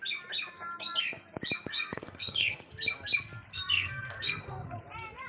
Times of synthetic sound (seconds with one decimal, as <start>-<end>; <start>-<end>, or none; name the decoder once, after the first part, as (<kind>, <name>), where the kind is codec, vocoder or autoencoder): 1.7-2.7 (codec, SNAC); 3.5-4.8

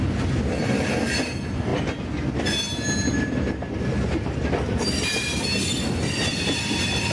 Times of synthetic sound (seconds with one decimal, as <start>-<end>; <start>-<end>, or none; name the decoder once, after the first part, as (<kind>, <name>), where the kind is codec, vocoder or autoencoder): none

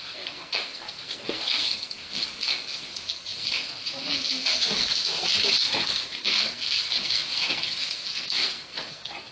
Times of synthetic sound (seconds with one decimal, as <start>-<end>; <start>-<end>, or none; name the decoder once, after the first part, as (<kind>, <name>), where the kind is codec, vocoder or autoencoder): 0.0-9.3 (codec, SNAC)